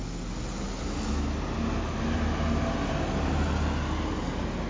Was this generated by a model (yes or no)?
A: no